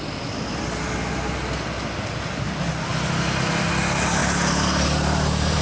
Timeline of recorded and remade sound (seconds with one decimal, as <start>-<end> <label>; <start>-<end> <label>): 0.0-4.2 recorded; 4.2-5.6 remade

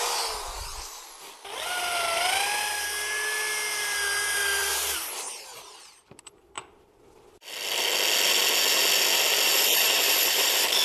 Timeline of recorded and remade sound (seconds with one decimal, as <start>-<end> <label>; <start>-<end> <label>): 0.0-4.6 recorded; 4.6-7.0 remade; 7.0-10.8 recorded

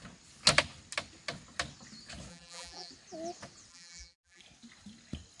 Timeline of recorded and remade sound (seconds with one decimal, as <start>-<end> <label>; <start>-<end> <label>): 0.0-2.3 recorded; 2.3-2.9 remade; 2.9-3.7 recorded; 3.7-4.4 remade; 4.4-5.4 recorded